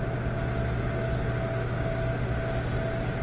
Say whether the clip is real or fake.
real